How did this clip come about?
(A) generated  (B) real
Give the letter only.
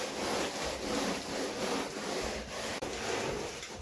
A